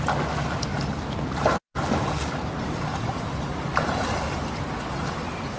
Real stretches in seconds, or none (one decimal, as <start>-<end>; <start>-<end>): 0.0-0.7; 4.1-5.6